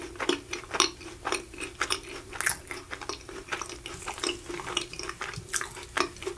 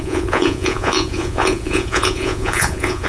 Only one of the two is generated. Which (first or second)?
second